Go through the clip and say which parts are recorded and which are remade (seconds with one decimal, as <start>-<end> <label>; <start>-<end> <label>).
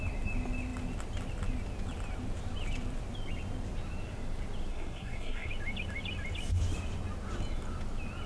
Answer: 0.0-4.7 recorded; 4.7-5.5 remade; 5.5-8.3 recorded